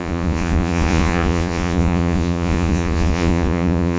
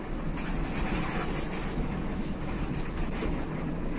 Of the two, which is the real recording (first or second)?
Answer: second